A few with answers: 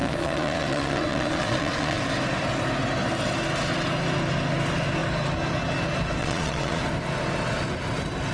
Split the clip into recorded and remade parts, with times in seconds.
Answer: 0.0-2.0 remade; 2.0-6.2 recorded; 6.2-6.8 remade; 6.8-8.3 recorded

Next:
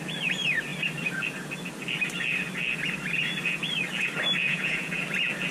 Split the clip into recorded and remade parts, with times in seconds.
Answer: 0.0-4.4 recorded; 4.4-5.0 remade; 5.0-5.5 recorded